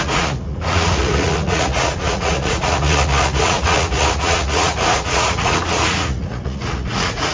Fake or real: fake